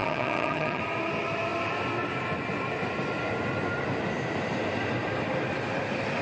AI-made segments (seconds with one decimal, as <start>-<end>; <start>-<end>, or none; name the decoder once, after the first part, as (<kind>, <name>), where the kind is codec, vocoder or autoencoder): 0.0-0.8 (vocoder, HiFi-GAN)